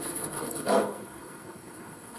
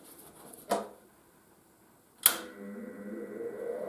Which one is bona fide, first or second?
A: second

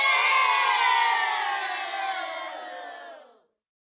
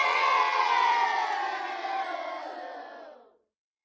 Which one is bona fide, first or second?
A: first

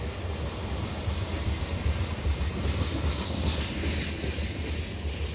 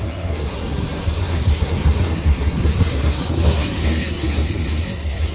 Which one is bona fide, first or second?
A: first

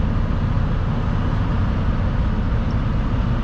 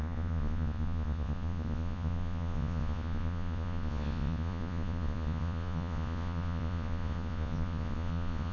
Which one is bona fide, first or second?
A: first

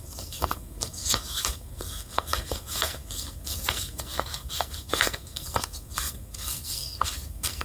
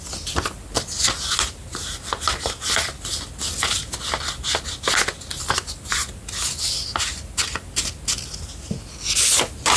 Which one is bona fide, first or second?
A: second